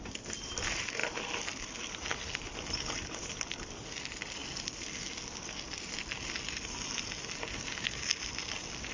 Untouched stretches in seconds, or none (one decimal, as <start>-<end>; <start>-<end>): 0.0-8.9